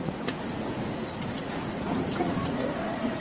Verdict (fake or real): fake